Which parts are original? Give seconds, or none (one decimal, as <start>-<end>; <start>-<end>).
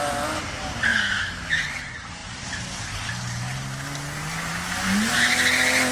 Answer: 0.0-0.9; 1.6-5.9